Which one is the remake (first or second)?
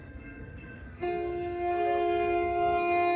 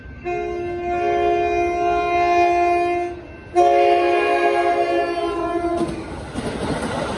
first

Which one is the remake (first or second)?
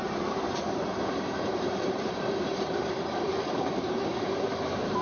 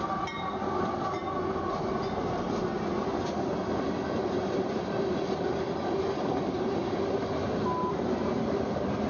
first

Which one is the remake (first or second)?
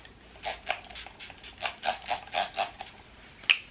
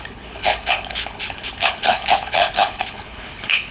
second